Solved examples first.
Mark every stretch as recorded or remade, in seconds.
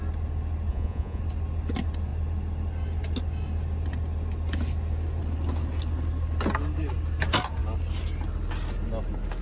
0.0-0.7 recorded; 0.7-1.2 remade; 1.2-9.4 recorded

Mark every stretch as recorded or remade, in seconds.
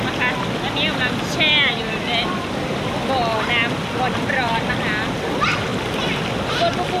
0.0-7.0 recorded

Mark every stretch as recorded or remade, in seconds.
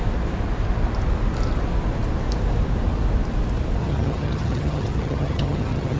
0.0-3.8 recorded; 3.8-6.0 remade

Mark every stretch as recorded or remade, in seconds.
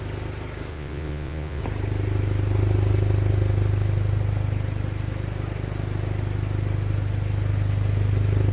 0.0-0.7 recorded; 0.7-1.6 remade; 1.6-8.5 recorded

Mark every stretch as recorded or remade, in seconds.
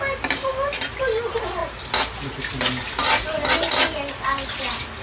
0.0-5.0 recorded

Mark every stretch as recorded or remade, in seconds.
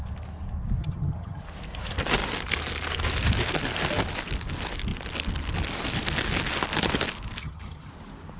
0.0-0.8 recorded; 0.8-1.4 remade; 1.4-7.4 recorded; 7.4-7.9 remade; 7.9-8.4 recorded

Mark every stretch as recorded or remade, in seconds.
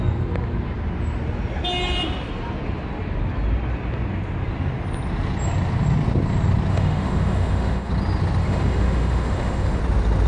0.0-6.7 recorded; 6.7-7.9 remade; 7.9-8.4 recorded; 8.4-9.8 remade; 9.8-10.3 recorded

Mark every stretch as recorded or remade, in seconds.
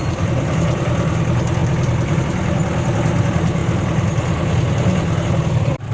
0.0-3.6 remade; 3.6-5.3 recorded; 5.3-5.9 remade